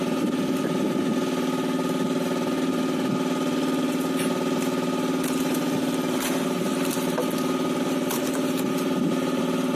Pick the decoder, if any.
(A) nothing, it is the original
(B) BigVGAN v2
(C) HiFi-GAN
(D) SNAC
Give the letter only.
A